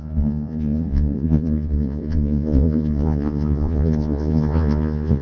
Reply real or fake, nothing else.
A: fake